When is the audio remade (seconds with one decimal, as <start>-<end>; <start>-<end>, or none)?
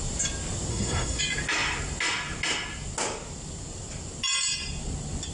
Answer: 0.7-1.2